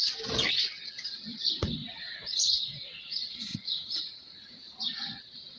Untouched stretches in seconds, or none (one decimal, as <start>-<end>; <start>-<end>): 0.0-1.8; 3.1-3.5; 4.7-5.6